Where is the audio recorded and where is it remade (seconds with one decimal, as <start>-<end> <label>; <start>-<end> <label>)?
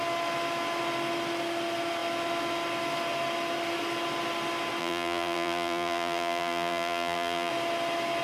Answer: 0.0-4.8 recorded; 4.8-7.5 remade; 7.5-8.2 recorded